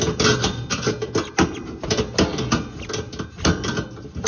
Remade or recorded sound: recorded